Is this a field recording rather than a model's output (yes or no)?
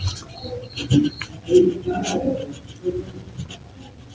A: yes